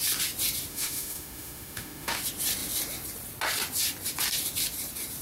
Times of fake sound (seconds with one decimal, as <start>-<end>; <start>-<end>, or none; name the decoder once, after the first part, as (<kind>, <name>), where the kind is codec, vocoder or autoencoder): 0.7-2.2 (autoencoder, DAC-VAE)